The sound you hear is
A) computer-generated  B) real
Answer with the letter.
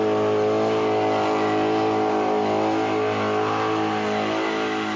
B